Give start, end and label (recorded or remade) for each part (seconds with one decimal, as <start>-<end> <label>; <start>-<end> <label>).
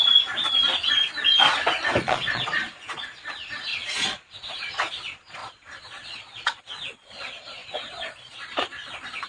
0.0-0.4 remade; 0.4-2.0 recorded; 2.0-9.3 remade